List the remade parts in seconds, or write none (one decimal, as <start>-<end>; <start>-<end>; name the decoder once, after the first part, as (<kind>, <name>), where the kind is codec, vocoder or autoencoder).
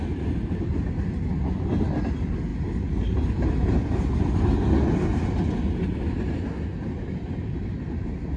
none